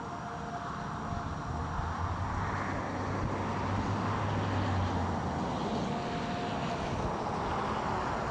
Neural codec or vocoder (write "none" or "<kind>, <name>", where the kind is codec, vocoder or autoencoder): none